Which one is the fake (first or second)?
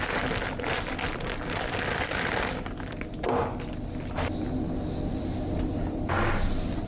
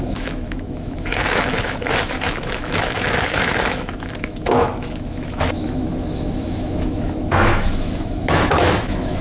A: second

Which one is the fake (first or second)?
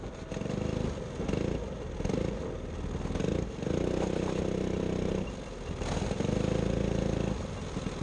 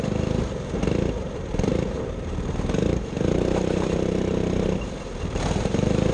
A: second